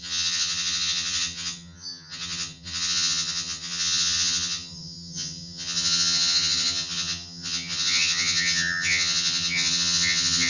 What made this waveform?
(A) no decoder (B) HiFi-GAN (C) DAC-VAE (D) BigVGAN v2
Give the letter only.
B